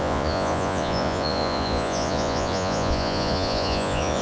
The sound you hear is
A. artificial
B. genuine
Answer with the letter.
A